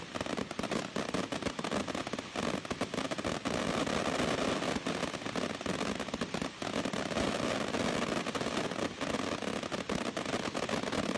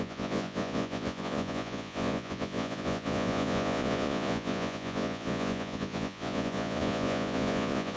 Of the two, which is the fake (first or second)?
second